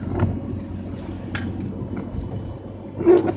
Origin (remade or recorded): recorded